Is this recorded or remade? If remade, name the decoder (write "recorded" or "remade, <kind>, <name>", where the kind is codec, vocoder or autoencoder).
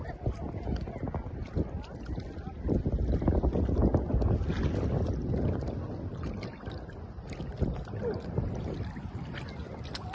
recorded